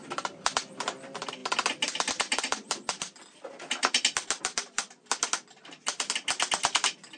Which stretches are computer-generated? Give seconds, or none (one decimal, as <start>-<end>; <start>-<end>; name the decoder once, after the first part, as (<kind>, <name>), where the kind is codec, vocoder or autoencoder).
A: none